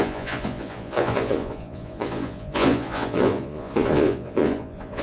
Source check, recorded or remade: remade